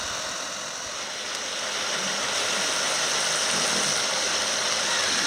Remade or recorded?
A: recorded